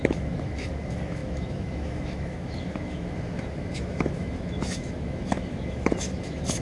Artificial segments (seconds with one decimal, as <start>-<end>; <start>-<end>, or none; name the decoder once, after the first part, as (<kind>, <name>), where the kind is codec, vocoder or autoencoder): 0.0-6.6 (autoencoder, DAC-VAE)